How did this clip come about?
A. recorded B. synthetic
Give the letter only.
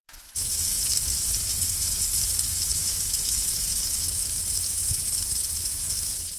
B